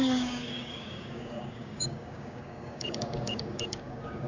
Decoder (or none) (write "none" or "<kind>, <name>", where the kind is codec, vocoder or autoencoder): codec, DAC